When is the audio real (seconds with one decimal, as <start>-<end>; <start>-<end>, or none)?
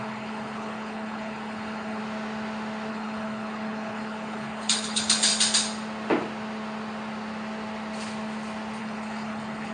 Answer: 2.0-2.9; 5.3-8.8